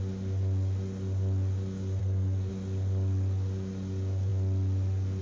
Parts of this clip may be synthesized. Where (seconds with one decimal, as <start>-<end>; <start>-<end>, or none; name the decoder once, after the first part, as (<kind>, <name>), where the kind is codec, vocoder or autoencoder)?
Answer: 2.0-2.5 (codec, SNAC)